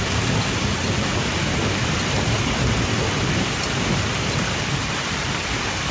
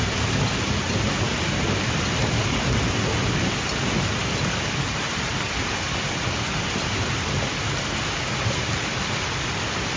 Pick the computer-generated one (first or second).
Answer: first